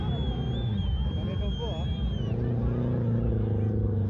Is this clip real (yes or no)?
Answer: yes